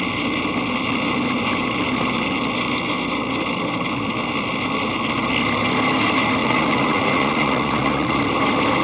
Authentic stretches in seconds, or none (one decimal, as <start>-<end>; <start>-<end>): 0.0-6.4; 8.2-8.8